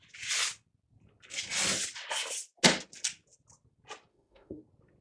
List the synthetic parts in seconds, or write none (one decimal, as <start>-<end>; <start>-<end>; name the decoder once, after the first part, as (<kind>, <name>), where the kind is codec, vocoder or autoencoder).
4.1-4.6 (autoencoder, DAC-VAE)